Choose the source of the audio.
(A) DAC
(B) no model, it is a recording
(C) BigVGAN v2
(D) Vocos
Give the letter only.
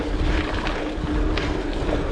B